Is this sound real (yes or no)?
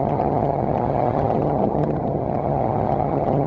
no